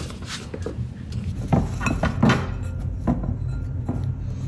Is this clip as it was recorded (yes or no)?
yes